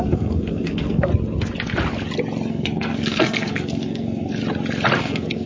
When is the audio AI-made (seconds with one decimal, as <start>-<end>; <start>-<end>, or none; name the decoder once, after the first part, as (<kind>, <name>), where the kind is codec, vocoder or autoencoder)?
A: 0.0-1.1 (codec, SNAC); 2.5-4.4; 5.0-5.5